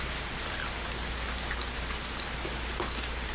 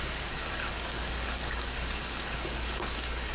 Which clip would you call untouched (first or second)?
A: first